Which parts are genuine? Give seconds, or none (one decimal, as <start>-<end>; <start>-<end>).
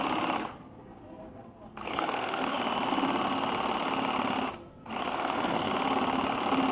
0.0-1.8; 2.6-5.1; 5.7-6.7